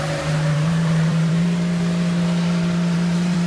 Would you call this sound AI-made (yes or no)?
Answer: yes